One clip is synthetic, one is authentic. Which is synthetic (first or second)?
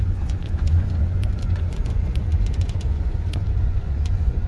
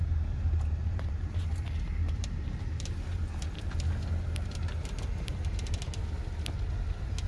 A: first